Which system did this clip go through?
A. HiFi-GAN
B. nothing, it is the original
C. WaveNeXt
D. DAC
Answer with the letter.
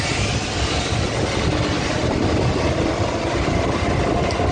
B